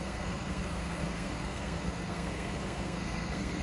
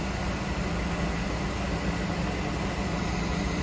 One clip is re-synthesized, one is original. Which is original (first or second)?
second